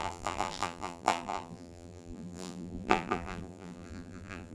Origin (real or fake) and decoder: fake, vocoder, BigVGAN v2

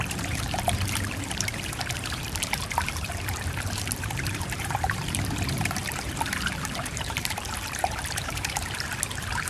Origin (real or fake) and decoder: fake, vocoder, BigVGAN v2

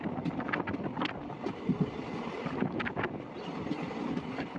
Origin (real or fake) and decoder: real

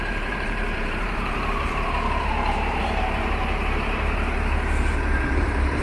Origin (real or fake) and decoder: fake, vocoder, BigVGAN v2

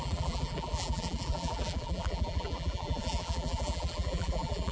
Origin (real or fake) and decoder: fake, vocoder, BigVGAN v2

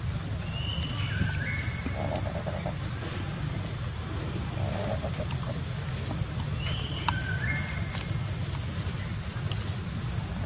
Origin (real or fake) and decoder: real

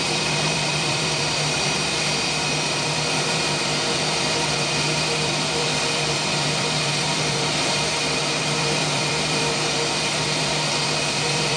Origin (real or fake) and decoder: fake, vocoder, BigVGAN v2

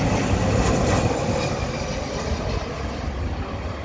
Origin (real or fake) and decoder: real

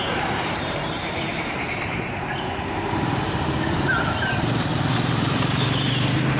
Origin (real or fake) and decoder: fake, vocoder, BigVGAN v2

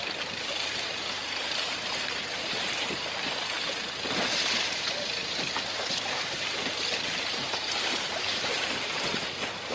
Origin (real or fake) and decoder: fake, vocoder, BigVGAN v2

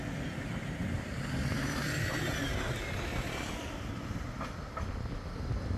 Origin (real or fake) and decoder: real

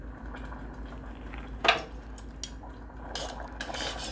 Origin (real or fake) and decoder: real